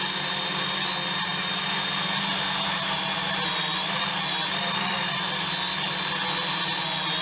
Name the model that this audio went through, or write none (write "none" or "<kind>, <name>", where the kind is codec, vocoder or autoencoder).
none